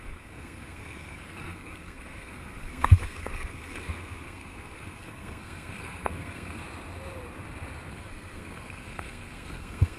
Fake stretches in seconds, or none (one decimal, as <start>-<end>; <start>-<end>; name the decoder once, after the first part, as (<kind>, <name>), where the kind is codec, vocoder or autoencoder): 0.0-6.6 (codec, SNAC); 7.9-10.0